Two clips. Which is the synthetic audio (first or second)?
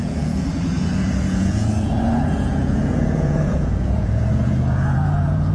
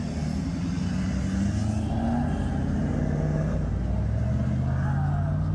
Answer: first